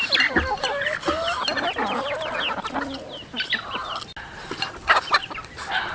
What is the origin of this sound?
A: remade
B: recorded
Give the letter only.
B